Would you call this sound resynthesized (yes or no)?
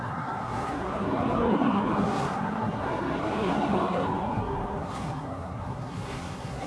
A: yes